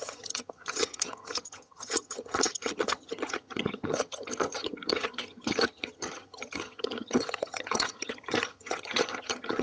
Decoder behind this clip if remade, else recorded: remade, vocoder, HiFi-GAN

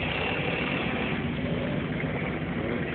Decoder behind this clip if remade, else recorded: remade, vocoder, BigVGAN v2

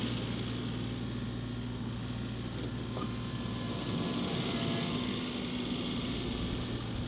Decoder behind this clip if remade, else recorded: recorded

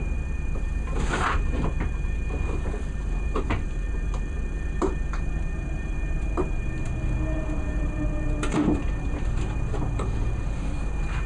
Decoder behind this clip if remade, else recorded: remade, vocoder, BigVGAN v2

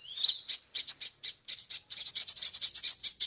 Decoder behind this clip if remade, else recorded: recorded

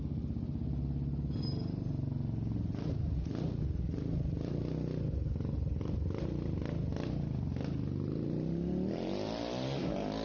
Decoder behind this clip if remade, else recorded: recorded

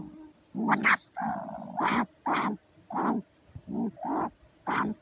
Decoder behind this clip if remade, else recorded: recorded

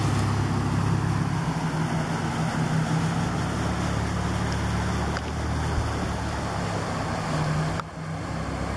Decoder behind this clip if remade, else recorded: recorded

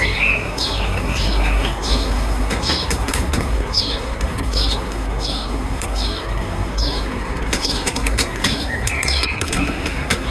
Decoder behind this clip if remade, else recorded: remade, codec, SNAC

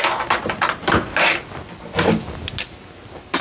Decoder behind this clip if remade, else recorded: recorded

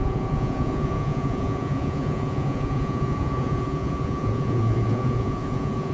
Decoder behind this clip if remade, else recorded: remade, vocoder, Vocos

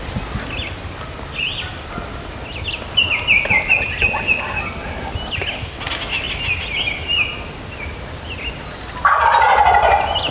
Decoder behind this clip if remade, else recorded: recorded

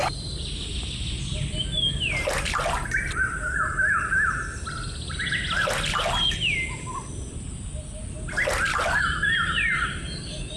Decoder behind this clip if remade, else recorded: recorded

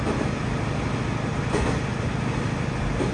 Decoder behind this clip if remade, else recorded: recorded